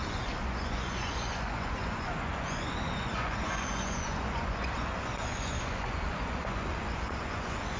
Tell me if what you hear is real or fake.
fake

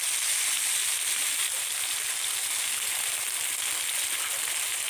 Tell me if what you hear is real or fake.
real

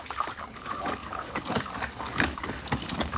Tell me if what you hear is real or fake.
fake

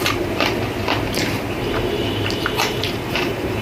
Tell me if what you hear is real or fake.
fake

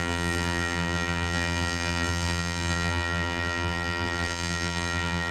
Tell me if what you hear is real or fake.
fake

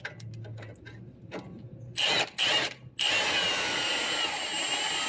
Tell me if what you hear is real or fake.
real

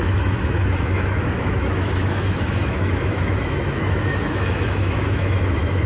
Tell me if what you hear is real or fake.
fake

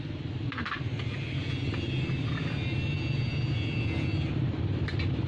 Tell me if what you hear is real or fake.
real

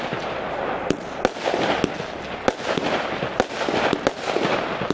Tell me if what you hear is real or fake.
real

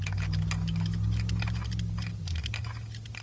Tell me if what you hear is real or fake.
real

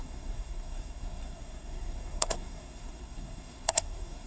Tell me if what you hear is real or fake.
fake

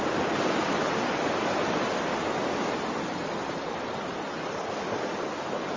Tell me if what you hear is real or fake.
real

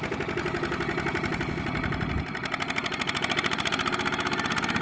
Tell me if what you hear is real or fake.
real